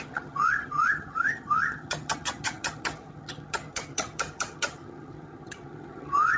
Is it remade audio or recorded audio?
remade